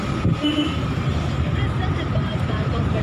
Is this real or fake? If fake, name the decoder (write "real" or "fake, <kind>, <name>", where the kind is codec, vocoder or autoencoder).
fake, vocoder, BigVGAN v2